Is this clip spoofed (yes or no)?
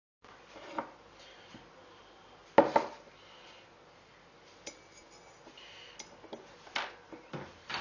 no